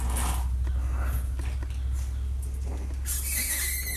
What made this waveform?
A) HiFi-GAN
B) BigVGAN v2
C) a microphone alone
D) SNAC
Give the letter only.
C